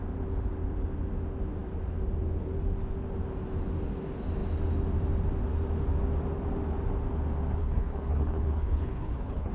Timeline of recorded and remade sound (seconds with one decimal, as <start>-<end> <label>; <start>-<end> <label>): 0.0-7.6 recorded; 7.6-9.5 remade